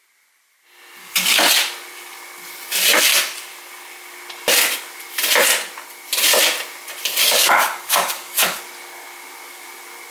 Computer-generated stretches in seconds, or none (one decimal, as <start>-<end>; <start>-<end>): 1.0-1.5; 7.2-8.6